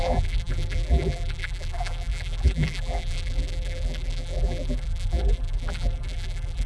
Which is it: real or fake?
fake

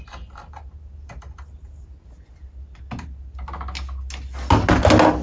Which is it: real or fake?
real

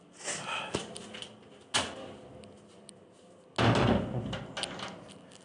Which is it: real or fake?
real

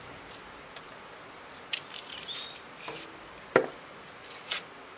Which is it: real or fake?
real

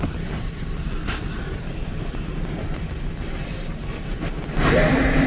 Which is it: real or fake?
fake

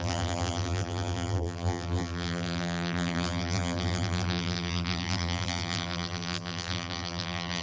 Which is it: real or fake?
fake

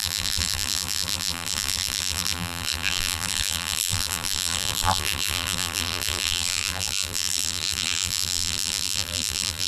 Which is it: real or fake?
fake